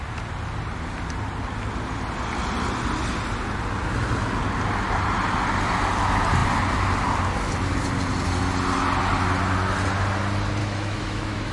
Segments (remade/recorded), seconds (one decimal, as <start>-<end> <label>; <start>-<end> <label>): 0.0-10.6 recorded; 10.6-11.5 remade